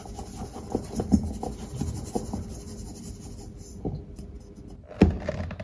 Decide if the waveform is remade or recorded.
recorded